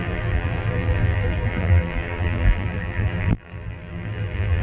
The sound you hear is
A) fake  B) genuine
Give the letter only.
A